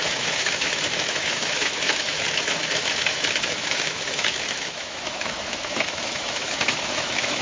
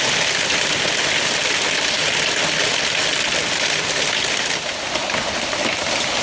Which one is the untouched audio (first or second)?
second